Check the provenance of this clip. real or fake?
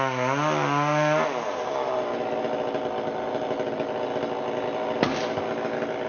real